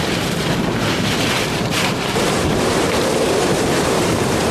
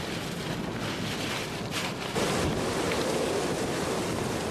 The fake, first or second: first